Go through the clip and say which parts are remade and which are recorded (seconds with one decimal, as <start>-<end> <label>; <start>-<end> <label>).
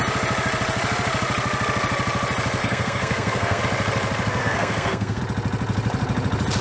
0.0-2.6 recorded; 2.6-3.6 remade; 3.6-4.4 recorded; 4.4-5.2 remade; 5.2-6.6 recorded